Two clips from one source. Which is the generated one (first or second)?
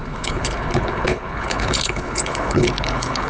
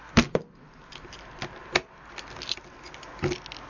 first